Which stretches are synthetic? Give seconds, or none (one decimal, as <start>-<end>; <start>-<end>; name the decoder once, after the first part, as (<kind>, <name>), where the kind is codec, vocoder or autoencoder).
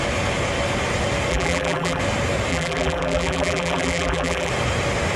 1.3-2.0 (vocoder, BigVGAN v2); 2.5-4.5